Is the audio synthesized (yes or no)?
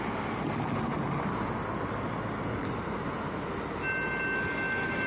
no